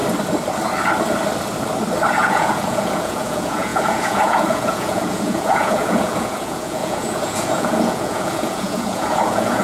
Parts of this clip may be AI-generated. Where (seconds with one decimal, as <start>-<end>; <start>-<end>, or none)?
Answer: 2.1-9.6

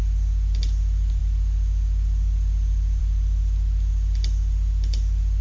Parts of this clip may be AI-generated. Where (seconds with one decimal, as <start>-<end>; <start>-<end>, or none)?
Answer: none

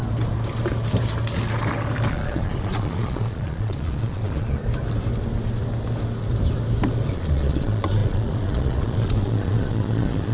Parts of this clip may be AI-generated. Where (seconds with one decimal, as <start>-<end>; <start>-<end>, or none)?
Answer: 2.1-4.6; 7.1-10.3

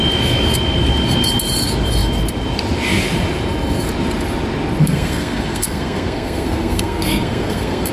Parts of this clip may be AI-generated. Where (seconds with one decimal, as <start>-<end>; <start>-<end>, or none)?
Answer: 4.8-7.9

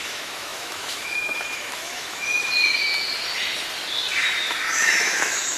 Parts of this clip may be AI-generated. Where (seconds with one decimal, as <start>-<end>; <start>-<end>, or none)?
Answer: 0.0-2.5; 4.7-5.6

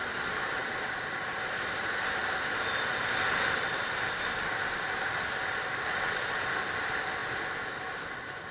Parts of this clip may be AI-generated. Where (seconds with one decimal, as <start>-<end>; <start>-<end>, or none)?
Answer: none

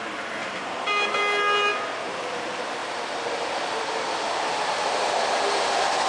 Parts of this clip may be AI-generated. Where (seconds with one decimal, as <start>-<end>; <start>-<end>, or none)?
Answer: 0.4-1.2; 1.7-2.2; 2.8-4.3

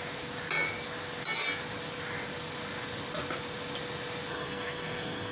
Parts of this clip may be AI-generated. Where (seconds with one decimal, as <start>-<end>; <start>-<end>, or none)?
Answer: 4.3-5.3